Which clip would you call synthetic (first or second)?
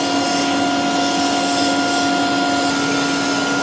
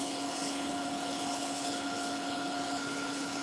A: second